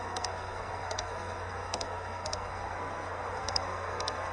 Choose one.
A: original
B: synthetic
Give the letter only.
B